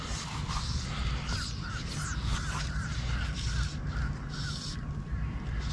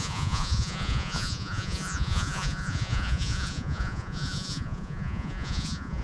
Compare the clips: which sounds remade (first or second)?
second